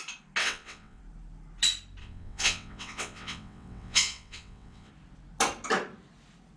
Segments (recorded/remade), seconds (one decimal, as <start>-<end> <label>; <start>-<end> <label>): 0.0-0.4 recorded; 0.4-1.0 remade; 1.0-2.0 recorded; 2.0-4.9 remade; 4.9-6.6 recorded